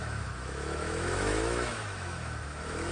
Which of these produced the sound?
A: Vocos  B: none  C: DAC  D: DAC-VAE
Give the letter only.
D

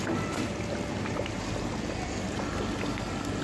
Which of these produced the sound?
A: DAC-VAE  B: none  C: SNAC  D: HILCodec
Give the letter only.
B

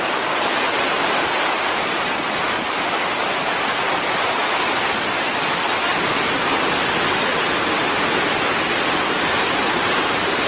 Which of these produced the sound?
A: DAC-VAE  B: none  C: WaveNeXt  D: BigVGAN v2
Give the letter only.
B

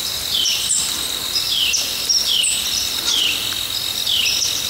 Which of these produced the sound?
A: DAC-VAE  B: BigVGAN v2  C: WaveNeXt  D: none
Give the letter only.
D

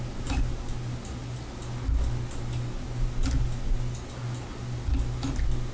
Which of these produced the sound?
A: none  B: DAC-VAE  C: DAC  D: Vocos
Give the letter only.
A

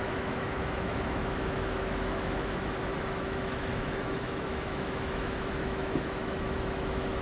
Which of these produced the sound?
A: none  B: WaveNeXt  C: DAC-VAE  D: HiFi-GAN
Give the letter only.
C